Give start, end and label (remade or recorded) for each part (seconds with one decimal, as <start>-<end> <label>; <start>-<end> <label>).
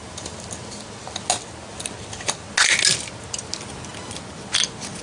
0.0-1.3 remade; 1.3-5.0 recorded